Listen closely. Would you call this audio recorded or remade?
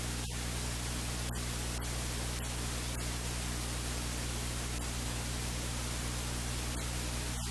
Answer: recorded